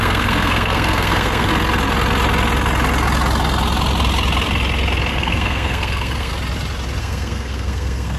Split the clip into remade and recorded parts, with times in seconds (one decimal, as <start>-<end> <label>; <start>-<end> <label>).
0.0-1.5 remade; 1.5-5.1 recorded; 5.1-6.3 remade; 6.3-7.0 recorded; 7.0-8.2 remade